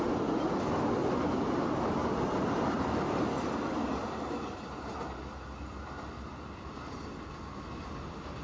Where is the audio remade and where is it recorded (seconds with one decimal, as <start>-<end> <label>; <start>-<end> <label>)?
0.0-8.4 recorded